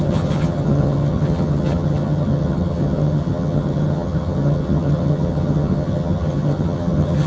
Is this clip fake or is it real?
fake